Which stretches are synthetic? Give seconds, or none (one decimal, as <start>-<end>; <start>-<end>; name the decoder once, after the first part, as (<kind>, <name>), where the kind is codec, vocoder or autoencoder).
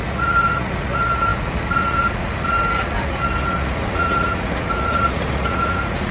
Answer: 0.0-6.1 (vocoder, Vocos)